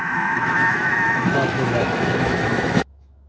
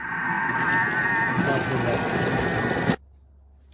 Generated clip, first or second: first